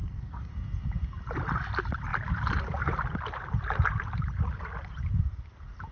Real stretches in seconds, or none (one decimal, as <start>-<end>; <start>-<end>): 0.5-5.9

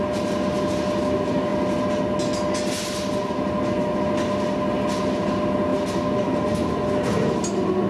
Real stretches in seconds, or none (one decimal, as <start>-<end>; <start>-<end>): 0.0-7.9

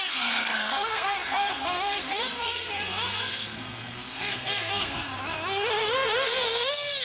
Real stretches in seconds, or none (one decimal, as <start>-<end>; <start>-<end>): 5.1-5.8

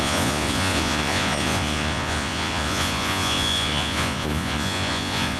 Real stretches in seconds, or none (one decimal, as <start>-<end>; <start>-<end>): none

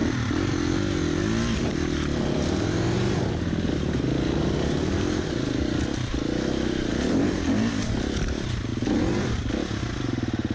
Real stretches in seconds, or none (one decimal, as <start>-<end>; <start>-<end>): 0.0-10.5